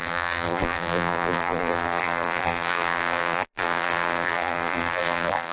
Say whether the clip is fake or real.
fake